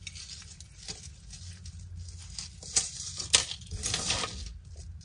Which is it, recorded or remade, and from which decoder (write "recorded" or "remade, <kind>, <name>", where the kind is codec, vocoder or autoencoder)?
recorded